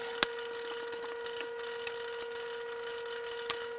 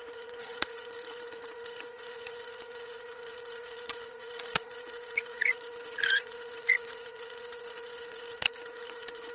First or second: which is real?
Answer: first